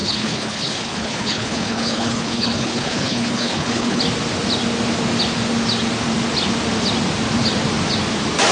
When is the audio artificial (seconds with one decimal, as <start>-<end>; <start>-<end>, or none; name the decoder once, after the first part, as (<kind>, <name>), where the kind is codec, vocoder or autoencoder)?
0.0-4.0 (codec, HILCodec)